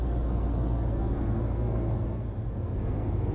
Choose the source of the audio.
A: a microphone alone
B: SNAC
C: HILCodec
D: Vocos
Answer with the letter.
B